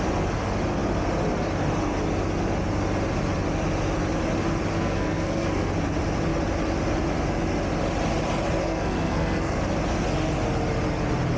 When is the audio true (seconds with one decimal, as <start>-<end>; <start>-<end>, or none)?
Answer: 0.0-4.7; 5.7-8.6; 9.6-11.4